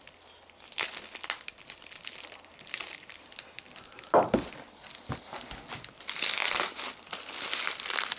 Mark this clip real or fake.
real